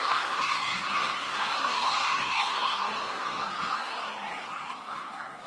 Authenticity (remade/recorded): remade